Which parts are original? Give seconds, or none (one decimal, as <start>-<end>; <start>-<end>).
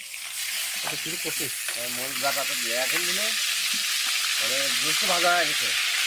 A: 0.0-6.1